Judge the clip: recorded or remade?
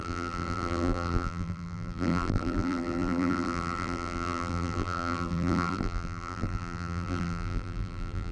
remade